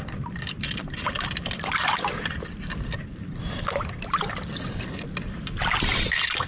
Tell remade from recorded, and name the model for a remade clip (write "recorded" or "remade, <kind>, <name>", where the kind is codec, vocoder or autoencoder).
recorded